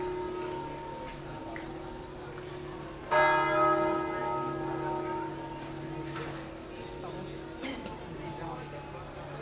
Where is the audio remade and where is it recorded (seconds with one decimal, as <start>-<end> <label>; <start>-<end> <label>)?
0.0-9.4 recorded